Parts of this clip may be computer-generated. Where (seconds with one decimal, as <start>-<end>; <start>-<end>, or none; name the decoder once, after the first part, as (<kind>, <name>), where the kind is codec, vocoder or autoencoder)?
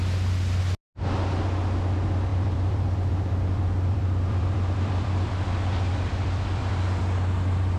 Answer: 2.3-7.0 (vocoder, BigVGAN v2)